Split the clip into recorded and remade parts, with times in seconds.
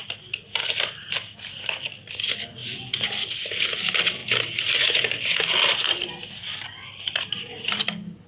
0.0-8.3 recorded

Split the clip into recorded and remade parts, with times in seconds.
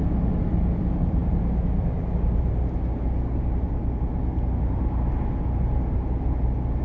0.0-6.8 recorded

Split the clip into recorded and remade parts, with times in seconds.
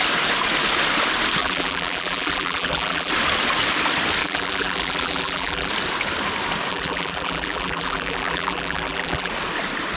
0.0-1.4 recorded; 1.4-3.1 remade; 3.1-4.2 recorded; 4.2-5.7 remade; 5.7-6.7 recorded; 6.7-9.3 remade; 9.3-10.0 recorded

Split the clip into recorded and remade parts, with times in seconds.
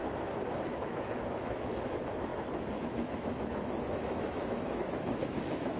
0.0-0.8 recorded; 0.8-5.8 remade